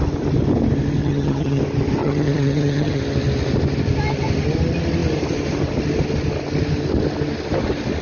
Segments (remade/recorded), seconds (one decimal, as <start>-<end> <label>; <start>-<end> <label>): 0.0-1.0 recorded; 1.0-1.6 remade; 1.6-2.0 recorded; 2.0-3.0 remade; 3.0-8.0 recorded